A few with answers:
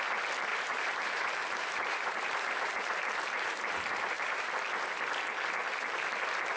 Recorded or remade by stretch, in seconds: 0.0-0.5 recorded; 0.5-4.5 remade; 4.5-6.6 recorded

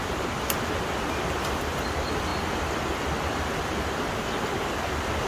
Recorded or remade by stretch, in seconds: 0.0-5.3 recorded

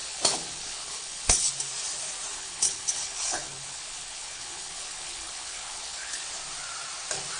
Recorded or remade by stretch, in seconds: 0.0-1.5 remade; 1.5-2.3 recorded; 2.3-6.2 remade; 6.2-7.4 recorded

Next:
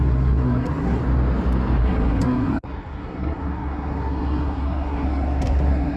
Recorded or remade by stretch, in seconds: 0.0-1.0 remade; 1.0-1.8 recorded; 1.8-6.0 remade

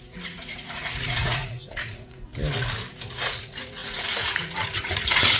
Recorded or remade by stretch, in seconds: 0.0-2.3 remade; 2.3-2.9 recorded; 2.9-5.4 remade

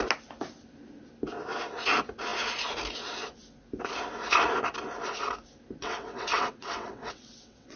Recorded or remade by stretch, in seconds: 0.0-5.8 recorded; 5.8-7.8 remade